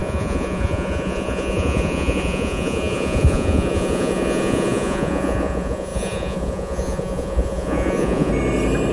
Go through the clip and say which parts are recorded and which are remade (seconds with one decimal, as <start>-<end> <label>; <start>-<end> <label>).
0.0-8.3 remade; 8.3-8.9 recorded